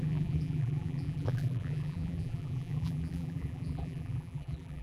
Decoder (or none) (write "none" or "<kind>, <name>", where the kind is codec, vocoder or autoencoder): vocoder, BigVGAN v2